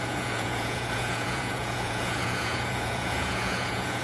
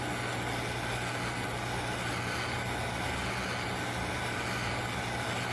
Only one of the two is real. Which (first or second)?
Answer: second